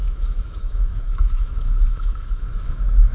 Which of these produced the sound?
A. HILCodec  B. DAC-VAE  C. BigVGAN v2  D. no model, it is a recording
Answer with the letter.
B